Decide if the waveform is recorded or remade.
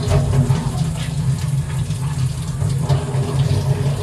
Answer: recorded